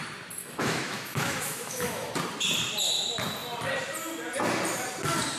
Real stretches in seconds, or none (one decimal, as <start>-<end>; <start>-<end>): 0.0-0.4; 2.1-5.4